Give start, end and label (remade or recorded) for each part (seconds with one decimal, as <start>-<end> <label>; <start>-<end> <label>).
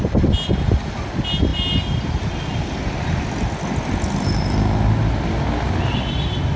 0.0-6.6 recorded